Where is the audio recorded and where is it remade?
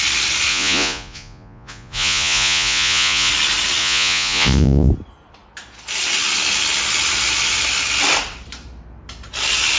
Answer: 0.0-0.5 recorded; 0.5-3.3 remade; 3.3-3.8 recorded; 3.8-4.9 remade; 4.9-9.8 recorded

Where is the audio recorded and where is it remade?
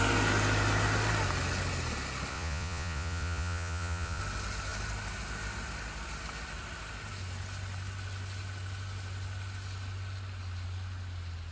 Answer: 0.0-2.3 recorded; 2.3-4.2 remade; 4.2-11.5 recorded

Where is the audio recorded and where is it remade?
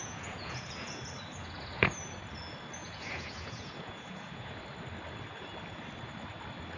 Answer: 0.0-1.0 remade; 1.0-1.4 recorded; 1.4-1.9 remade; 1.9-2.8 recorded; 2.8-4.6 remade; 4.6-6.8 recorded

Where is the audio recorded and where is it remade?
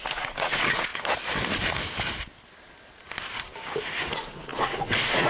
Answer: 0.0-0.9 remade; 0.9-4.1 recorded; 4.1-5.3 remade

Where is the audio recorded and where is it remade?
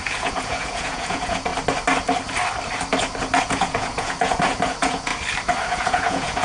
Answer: 0.0-1.5 remade; 1.5-3.4 recorded; 3.4-5.1 remade; 5.1-5.7 recorded; 5.7-6.4 remade